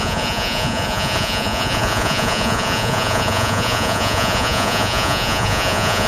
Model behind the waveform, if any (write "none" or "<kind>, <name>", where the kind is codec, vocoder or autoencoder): vocoder, Vocos